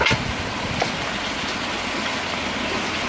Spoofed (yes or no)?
no